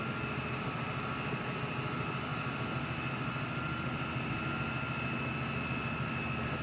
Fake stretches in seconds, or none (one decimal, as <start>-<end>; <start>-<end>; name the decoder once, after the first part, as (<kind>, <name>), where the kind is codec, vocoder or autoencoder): none